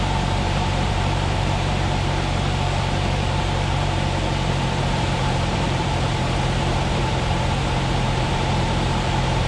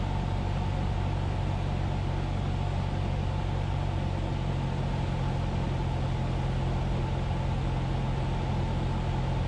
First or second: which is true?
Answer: second